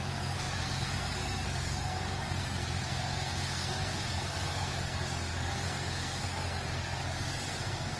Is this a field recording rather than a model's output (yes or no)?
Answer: no